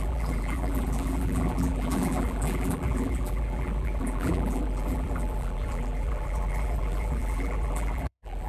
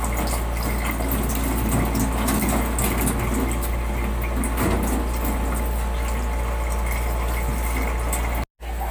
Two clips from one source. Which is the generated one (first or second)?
first